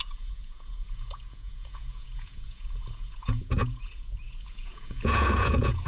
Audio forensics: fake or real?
fake